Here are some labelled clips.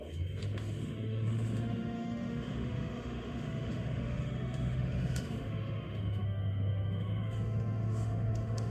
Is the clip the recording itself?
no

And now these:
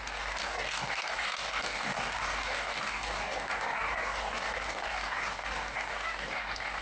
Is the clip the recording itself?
no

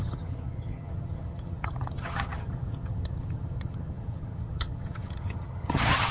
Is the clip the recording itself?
no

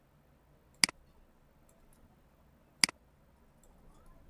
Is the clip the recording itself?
yes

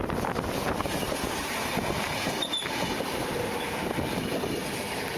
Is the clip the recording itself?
yes